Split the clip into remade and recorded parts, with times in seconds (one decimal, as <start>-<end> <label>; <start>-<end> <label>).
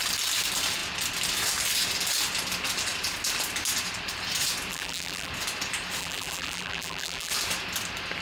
0.0-4.7 recorded; 4.7-5.3 remade; 5.3-6.0 recorded; 6.0-7.3 remade; 7.3-8.2 recorded